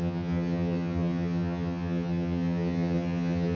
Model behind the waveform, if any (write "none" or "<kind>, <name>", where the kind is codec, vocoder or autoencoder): vocoder, HiFi-GAN